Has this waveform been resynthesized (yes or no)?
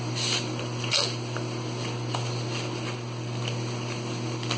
no